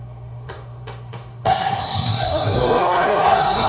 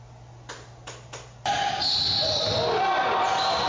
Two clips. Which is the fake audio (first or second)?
first